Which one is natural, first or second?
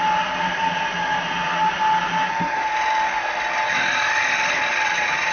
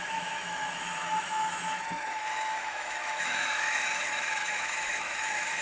first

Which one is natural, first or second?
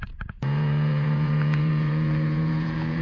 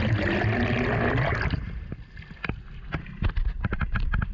second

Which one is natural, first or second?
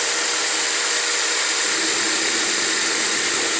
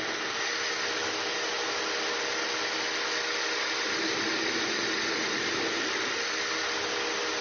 second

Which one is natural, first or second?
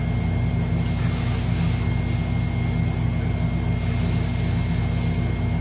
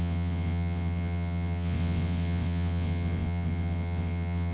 first